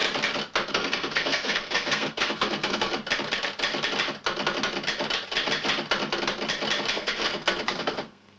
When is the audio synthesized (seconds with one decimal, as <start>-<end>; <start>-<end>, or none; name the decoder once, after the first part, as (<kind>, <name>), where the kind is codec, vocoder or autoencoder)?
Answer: 0.7-2.9 (codec, SNAC); 6.9-8.4